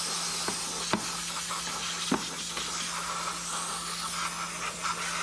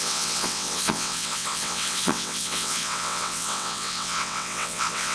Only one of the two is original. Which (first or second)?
first